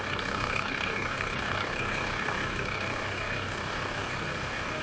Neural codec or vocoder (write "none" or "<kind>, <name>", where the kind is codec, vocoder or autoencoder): codec, DAC